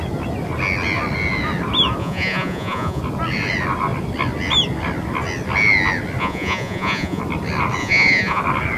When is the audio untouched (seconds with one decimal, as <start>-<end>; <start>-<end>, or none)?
0.0-2.0; 3.0-6.2; 7.2-7.8; 8.4-8.8